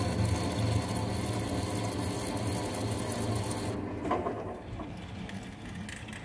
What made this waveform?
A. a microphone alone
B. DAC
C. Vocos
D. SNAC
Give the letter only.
A